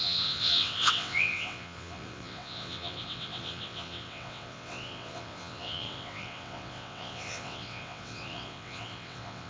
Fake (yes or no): yes